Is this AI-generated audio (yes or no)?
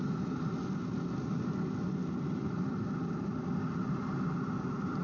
no